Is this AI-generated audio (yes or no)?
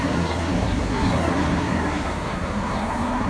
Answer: yes